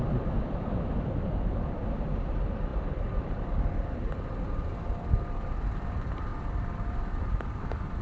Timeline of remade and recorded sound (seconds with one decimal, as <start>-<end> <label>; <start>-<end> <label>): 0.0-8.0 remade